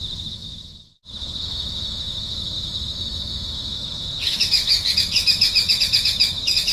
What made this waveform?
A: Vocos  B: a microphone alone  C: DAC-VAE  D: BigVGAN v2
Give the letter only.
C